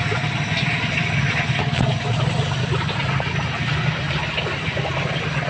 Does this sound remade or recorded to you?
recorded